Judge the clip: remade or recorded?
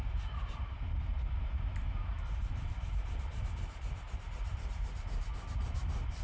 remade